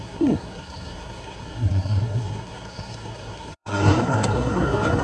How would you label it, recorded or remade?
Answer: remade